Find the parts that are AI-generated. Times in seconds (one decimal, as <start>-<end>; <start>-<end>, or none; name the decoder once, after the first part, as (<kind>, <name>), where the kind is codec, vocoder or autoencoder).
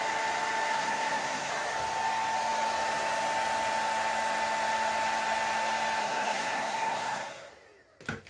0.7-1.5 (codec, SNAC); 6.0-7.5